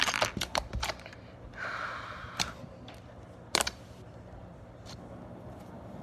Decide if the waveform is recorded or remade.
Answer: recorded